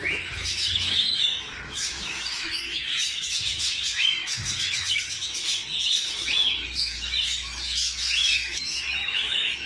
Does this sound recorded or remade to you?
remade